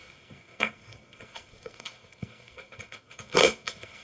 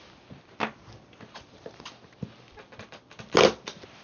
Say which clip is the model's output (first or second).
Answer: first